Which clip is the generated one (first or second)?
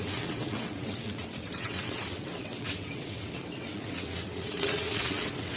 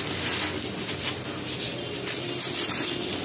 first